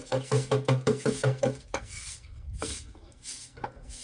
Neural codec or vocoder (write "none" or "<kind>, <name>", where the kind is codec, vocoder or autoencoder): codec, SNAC